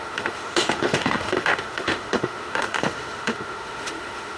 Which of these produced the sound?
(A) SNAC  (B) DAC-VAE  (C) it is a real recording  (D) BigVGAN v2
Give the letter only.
B